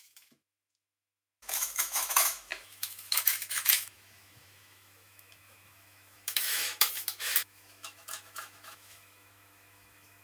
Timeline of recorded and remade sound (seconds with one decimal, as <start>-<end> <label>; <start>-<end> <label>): 0.0-10.2 remade